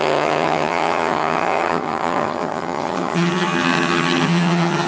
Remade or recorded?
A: remade